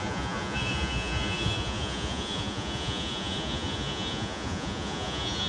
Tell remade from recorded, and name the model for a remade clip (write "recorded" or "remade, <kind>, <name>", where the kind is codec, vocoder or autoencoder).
remade, vocoder, Vocos